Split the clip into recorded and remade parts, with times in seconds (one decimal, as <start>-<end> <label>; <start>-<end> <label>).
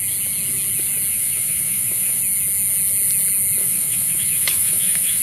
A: 0.0-1.1 recorded; 1.1-2.2 remade; 2.2-3.6 recorded; 3.6-5.2 remade